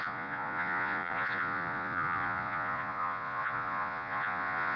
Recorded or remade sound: remade